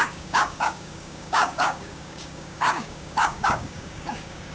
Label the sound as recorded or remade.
remade